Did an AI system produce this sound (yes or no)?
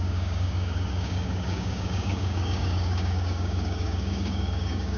yes